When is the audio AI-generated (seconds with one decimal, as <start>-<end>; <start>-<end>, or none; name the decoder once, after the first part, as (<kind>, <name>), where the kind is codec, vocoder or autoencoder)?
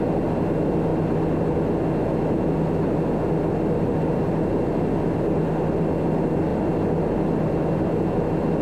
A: none